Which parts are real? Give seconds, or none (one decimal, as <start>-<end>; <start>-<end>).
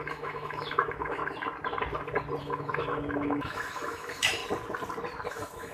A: 1.2-2.4; 4.4-5.3